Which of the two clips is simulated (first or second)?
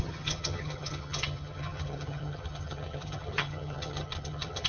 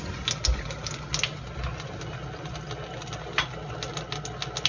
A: first